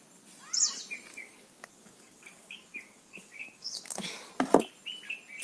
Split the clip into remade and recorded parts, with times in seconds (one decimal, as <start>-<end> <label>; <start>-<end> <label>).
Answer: 0.0-1.1 recorded; 1.1-4.3 remade; 4.3-5.4 recorded